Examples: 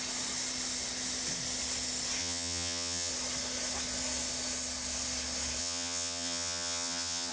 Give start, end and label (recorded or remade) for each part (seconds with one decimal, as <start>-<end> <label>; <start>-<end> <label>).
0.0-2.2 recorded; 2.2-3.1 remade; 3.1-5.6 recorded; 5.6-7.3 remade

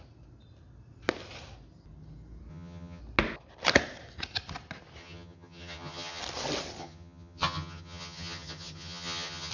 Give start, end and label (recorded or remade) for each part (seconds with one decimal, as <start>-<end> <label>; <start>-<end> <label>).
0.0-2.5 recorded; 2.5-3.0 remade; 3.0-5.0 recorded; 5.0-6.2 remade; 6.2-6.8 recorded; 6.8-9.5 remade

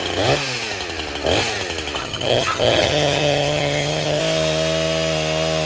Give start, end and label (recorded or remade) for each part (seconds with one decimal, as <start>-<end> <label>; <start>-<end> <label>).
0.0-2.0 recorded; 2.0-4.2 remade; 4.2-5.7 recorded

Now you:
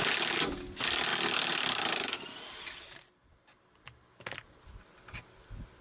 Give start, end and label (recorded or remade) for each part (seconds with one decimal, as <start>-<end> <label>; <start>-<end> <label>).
0.0-5.8 recorded